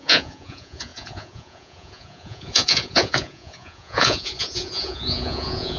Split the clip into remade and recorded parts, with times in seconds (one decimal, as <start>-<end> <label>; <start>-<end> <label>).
0.0-5.8 remade